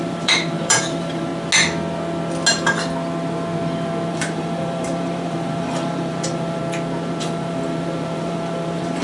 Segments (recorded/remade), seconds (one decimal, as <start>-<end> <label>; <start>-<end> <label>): 0.0-1.3 remade; 1.3-4.1 recorded; 4.1-6.6 remade; 6.6-7.2 recorded; 7.2-9.0 remade